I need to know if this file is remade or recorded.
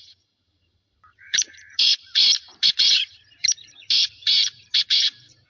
remade